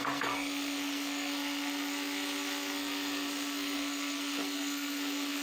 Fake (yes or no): yes